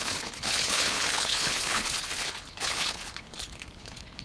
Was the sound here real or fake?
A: fake